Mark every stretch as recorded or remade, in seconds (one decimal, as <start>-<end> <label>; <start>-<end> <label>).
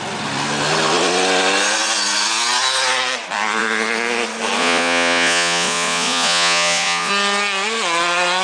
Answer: 0.0-4.6 recorded; 4.6-7.1 remade; 7.1-8.4 recorded